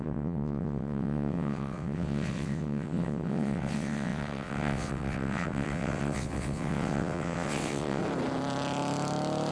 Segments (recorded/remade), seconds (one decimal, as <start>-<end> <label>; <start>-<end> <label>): 0.0-8.0 remade; 8.0-9.5 recorded